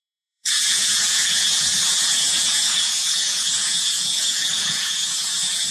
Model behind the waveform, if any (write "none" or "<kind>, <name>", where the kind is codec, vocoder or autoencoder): vocoder, Vocos